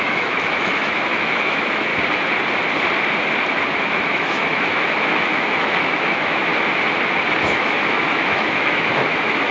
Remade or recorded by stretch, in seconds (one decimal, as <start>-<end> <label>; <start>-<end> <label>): 0.0-1.9 remade; 1.9-3.8 recorded; 3.8-6.5 remade; 6.5-7.4 recorded; 7.4-9.5 remade